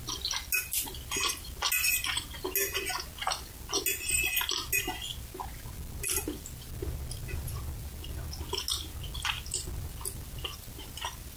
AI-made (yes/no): no